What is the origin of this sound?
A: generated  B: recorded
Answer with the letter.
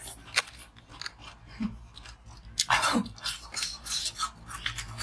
B